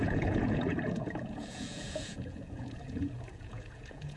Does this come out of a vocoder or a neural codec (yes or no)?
yes